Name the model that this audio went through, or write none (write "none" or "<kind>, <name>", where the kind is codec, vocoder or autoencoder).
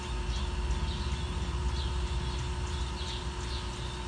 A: none